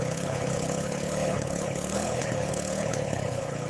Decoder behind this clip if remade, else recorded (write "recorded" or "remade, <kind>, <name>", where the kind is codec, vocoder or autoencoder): remade, codec, HILCodec